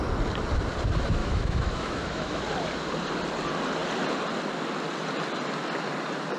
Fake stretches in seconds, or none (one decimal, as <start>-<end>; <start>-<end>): 1.2-2.4